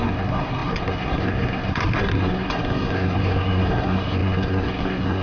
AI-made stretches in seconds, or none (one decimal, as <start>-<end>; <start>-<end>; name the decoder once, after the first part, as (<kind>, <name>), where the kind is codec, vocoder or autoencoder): 0.0-5.2 (codec, SNAC)